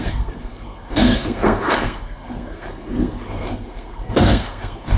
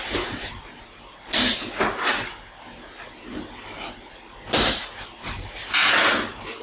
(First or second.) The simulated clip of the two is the first